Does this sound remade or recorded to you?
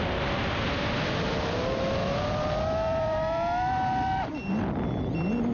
recorded